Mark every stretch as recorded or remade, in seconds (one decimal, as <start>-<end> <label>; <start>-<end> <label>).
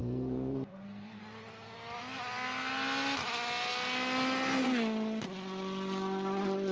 0.0-1.2 remade; 1.2-6.7 recorded